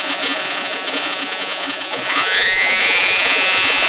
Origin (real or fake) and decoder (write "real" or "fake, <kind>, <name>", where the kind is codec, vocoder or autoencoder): fake, vocoder, Vocos